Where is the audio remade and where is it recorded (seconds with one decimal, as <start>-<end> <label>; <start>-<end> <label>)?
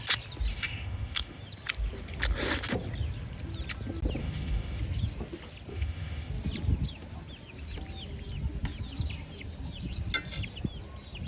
0.0-0.5 recorded; 0.5-1.4 remade; 1.4-4.2 recorded; 4.2-4.8 remade; 4.8-5.7 recorded; 5.7-6.3 remade; 6.3-11.3 recorded